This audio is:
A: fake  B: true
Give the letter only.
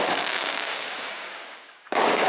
A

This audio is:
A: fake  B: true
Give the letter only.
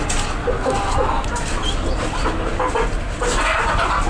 B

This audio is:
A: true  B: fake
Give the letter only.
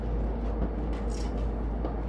A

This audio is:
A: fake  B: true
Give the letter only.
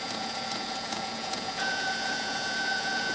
A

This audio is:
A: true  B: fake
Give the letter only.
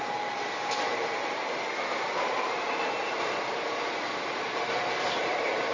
B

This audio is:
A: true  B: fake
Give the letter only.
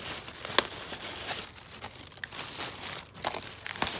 A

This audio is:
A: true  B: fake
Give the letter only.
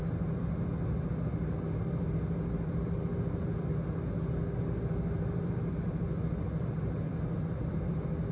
A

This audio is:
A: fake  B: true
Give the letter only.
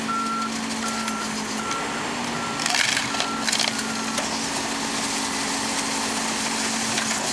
B